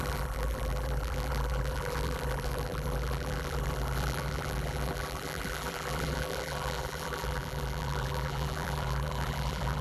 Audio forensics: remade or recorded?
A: remade